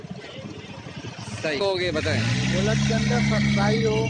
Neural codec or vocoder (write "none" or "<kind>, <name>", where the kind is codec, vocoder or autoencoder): none